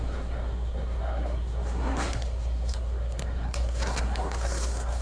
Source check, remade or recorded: remade